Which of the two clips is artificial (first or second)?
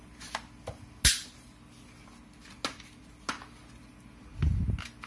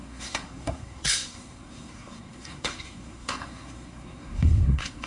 second